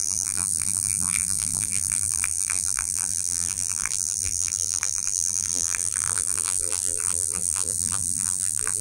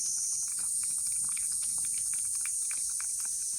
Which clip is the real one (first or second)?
second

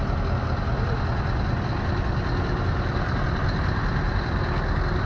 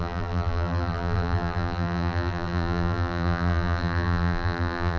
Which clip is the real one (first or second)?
first